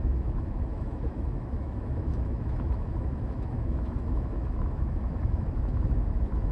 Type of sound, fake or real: fake